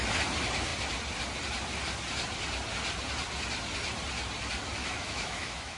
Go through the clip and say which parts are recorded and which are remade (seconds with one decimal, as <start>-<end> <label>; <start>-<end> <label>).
0.0-4.8 recorded; 4.8-5.8 remade